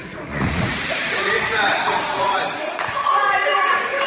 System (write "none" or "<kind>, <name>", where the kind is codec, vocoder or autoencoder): vocoder, Vocos